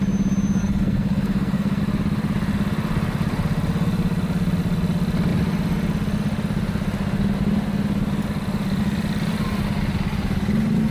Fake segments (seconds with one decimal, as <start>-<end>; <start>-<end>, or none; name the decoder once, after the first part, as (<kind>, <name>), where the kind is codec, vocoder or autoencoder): 0.6-1.8 (codec, SNAC)